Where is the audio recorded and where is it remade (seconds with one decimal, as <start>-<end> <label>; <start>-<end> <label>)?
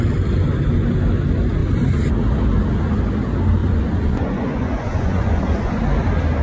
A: 0.0-3.6 recorded; 3.6-5.8 remade; 5.8-6.4 recorded